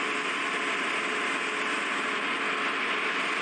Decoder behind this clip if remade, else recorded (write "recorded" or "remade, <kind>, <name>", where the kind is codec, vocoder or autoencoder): recorded